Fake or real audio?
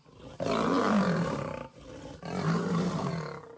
real